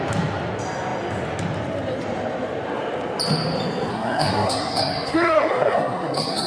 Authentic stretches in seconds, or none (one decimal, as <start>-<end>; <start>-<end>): 0.0-3.9